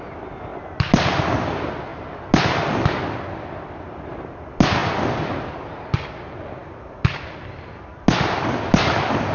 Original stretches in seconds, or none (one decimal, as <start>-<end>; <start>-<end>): 0.0-9.3

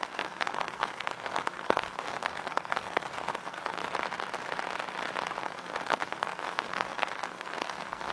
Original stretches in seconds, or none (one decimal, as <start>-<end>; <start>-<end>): 3.8-5.4